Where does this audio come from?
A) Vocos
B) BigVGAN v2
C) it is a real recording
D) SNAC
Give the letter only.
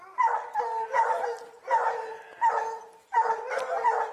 C